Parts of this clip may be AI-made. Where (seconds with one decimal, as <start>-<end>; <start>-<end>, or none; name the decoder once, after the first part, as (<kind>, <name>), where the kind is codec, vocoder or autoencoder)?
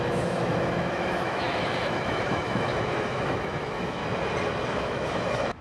0.0-4.0 (autoencoder, DAC-VAE); 4.7-5.6